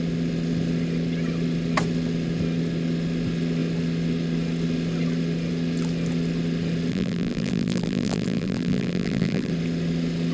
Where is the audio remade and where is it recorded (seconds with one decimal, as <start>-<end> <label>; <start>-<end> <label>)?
0.0-6.9 recorded; 6.9-9.5 remade; 9.5-10.3 recorded